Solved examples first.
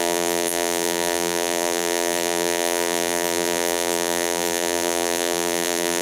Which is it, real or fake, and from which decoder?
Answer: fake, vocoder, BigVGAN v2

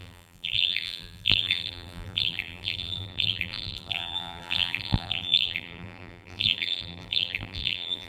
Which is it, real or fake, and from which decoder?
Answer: fake, vocoder, BigVGAN v2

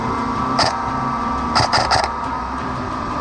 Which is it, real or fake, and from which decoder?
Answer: fake, vocoder, BigVGAN v2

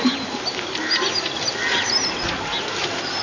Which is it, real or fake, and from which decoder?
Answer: real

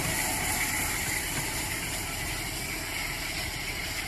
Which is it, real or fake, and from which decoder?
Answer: fake, vocoder, BigVGAN v2